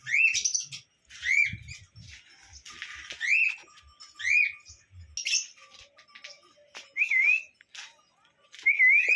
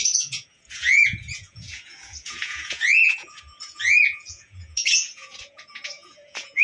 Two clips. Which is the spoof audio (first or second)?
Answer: second